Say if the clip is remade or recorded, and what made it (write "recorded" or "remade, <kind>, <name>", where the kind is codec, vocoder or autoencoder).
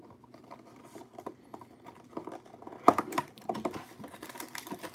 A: recorded